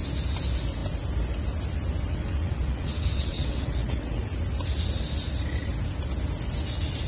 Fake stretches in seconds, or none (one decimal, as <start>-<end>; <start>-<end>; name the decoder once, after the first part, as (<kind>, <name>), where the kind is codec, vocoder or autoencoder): 2.1-4.2 (vocoder, WaveNeXt)